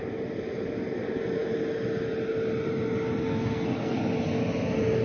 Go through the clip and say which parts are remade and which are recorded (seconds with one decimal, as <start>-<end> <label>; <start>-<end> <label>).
0.0-3.2 recorded; 3.2-4.0 remade; 4.0-5.0 recorded